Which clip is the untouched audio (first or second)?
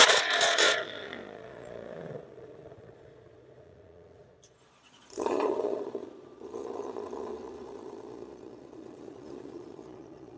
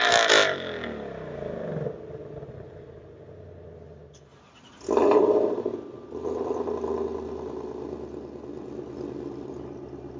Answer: second